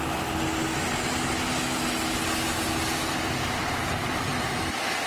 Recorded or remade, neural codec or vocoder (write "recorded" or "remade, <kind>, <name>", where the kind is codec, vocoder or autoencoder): recorded